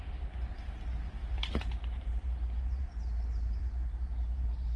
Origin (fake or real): fake